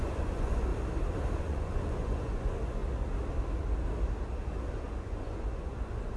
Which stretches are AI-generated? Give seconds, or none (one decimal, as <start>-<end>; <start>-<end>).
0.0-0.7; 1.4-2.8; 5.0-6.2